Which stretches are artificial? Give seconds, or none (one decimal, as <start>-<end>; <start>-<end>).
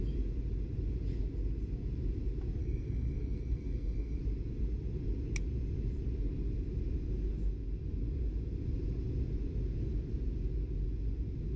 2.6-4.2